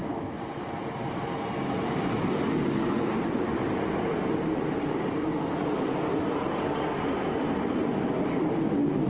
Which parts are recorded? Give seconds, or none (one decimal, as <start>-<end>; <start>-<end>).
0.0-9.1